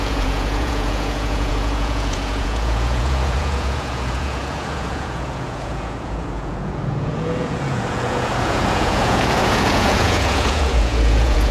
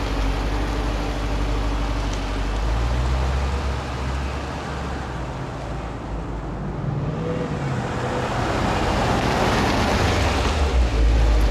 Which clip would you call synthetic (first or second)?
first